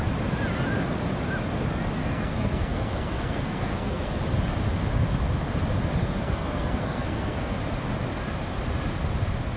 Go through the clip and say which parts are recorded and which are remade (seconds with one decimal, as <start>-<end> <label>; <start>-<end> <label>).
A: 0.0-2.0 recorded; 2.0-4.2 remade; 4.2-6.0 recorded; 6.0-7.6 remade; 7.6-9.6 recorded